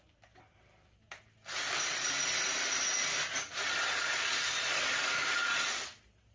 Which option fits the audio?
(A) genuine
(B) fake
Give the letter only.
A